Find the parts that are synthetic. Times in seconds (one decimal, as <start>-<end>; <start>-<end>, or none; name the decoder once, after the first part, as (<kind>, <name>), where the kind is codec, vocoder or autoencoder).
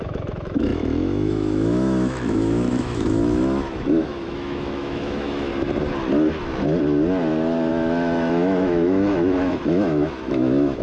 0.0-5.5 (autoencoder, DAC-VAE); 7.7-10.8